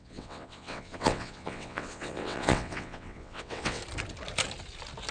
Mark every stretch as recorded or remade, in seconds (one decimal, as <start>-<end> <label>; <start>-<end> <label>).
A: 0.0-3.8 remade; 3.8-5.1 recorded